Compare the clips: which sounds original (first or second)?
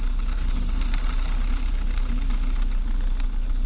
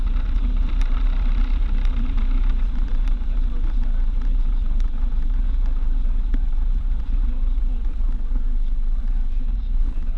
first